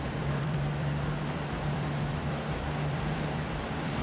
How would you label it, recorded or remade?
remade